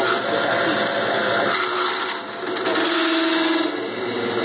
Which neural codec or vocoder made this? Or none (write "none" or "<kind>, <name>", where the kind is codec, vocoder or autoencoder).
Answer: none